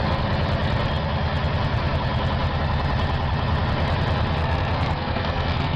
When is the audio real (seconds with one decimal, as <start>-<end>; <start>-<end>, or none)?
0.0-4.4